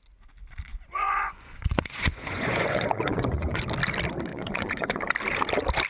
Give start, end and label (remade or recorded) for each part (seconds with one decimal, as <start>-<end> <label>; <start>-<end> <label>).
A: 0.0-0.7 recorded; 0.7-3.6 remade; 3.6-4.3 recorded; 4.3-5.0 remade; 5.0-5.9 recorded